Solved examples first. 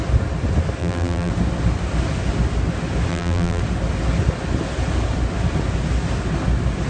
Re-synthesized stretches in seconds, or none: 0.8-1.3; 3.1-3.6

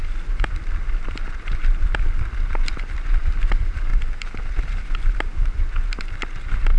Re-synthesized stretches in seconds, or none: 0.0-3.2; 3.9-4.6